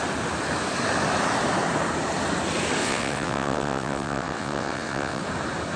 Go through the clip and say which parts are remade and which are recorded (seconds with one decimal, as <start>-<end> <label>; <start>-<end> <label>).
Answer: 0.0-2.8 recorded; 2.8-5.2 remade; 5.2-5.8 recorded